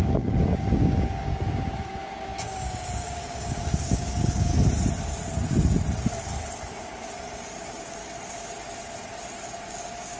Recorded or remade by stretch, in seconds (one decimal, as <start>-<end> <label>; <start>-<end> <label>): 0.0-4.5 remade; 4.5-7.6 recorded; 7.6-8.0 remade; 8.0-9.7 recorded; 9.7-10.2 remade